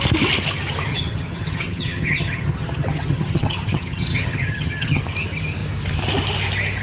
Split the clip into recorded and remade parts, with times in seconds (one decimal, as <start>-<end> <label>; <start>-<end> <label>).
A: 0.0-0.9 recorded; 0.9-5.0 remade; 5.0-6.8 recorded